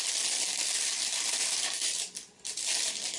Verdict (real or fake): real